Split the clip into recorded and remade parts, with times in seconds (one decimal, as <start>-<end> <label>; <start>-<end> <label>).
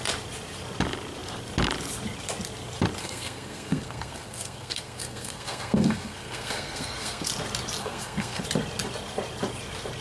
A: 0.0-3.0 recorded; 3.0-7.3 remade; 7.3-7.8 recorded; 7.8-8.4 remade; 8.4-10.0 recorded